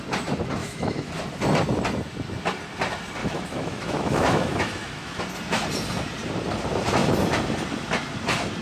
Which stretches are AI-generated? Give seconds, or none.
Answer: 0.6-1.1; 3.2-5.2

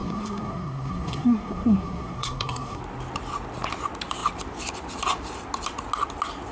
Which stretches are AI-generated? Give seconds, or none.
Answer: 0.0-2.8

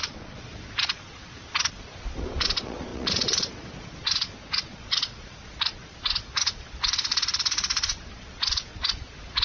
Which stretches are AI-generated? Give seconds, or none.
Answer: 0.0-9.4

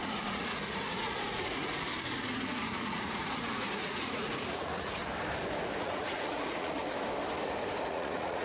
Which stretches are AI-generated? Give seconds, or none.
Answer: 0.0-1.9; 2.4-5.0; 5.8-6.8; 7.9-8.4

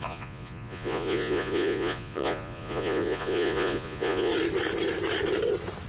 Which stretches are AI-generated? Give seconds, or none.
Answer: 0.0-4.3